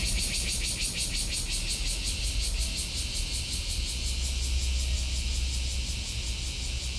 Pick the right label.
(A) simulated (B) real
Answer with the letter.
B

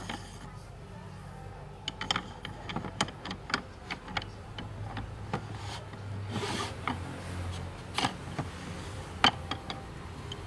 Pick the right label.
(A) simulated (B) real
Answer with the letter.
B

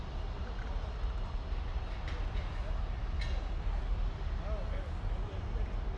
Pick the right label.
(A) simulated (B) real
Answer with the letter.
B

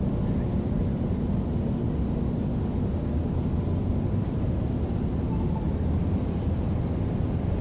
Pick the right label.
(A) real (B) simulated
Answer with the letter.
A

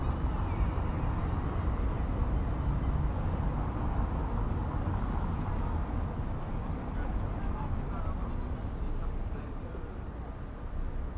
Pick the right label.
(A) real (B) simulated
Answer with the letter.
A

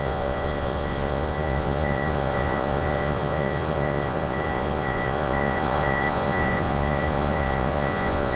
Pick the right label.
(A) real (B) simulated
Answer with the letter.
B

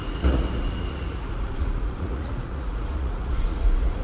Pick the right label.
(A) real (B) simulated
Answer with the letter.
B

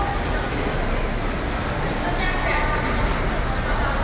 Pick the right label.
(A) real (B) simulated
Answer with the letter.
A